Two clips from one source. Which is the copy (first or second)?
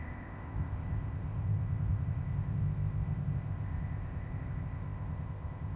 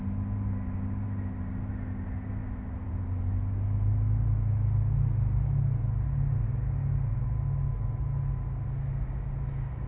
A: first